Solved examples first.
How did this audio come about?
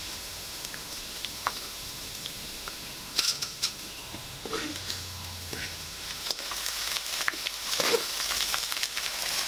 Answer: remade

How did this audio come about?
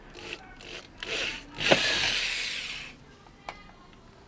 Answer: recorded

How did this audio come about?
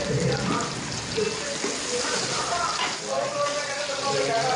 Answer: recorded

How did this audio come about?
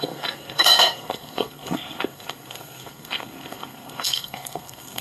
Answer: remade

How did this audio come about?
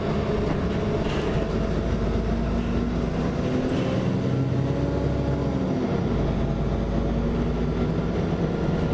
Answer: recorded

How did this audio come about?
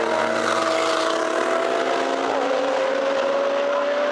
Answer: recorded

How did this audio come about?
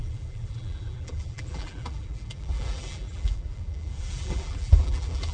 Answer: remade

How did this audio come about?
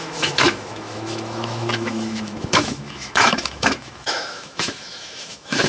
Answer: remade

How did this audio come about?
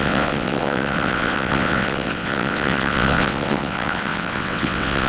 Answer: remade